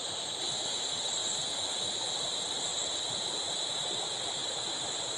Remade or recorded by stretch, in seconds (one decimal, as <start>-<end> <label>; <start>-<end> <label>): 0.0-1.2 remade; 1.2-2.1 recorded; 2.1-2.7 remade; 2.7-3.3 recorded; 3.3-5.2 remade